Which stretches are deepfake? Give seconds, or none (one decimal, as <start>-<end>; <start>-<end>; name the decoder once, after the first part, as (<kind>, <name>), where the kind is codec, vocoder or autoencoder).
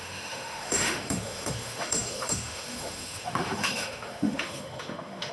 0.0-5.3 (autoencoder, DAC-VAE)